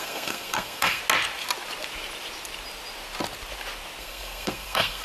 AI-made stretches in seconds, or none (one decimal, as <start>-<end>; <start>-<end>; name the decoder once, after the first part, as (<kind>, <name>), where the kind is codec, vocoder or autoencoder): 0.0-1.0 (codec, SNAC); 4.0-5.0